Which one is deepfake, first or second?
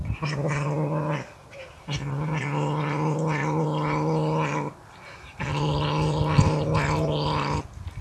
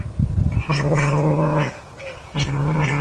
second